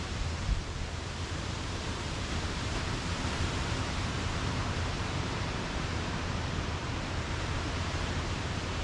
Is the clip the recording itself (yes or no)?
no